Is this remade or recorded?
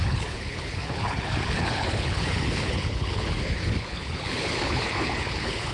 remade